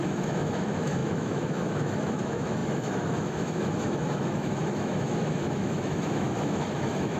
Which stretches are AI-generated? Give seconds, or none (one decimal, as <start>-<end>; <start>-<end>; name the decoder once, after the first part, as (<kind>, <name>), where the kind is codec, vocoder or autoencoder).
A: 0.0-7.2 (autoencoder, DAC-VAE)